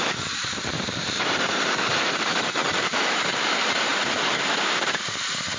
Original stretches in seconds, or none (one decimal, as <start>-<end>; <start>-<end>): 3.9-4.6